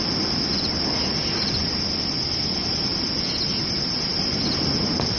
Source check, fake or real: real